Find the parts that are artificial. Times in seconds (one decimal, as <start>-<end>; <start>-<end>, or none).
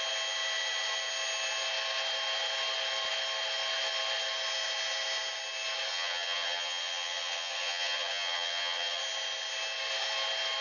5.9-9.0